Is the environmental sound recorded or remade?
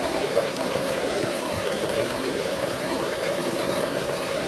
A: remade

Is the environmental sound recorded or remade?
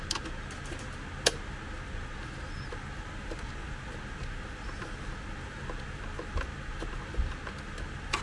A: recorded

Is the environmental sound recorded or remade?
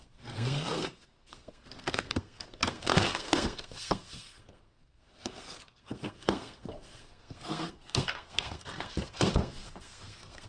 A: remade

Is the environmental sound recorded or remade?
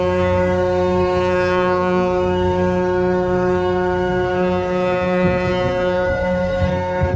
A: remade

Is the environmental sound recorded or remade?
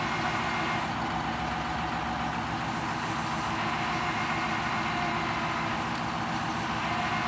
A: recorded